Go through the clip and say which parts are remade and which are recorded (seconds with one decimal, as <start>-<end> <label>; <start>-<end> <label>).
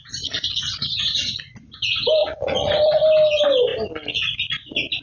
0.0-2.2 recorded; 2.2-2.7 remade; 2.7-5.0 recorded